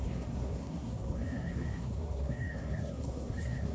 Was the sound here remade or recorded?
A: remade